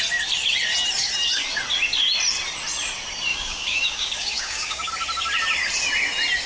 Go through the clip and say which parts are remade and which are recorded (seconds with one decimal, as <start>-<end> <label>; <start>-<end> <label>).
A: 0.0-3.3 recorded; 3.3-4.9 remade; 4.9-6.5 recorded